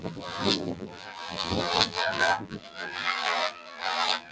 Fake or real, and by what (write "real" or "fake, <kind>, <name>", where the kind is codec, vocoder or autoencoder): fake, vocoder, BigVGAN v2